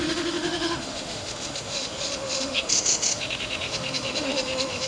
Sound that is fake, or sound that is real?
fake